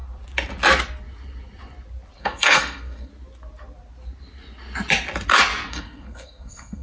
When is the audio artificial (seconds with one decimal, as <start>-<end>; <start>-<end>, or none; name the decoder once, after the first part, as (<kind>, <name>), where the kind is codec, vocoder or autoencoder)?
2.2-3.1 (codec, SNAC); 5.7-6.8